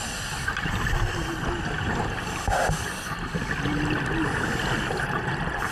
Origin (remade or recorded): recorded